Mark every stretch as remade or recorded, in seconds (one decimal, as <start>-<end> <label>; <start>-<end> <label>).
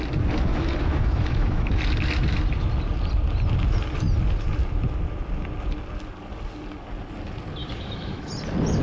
0.0-0.5 recorded; 0.5-1.8 remade; 1.8-7.6 recorded; 7.6-8.3 remade; 8.3-8.8 recorded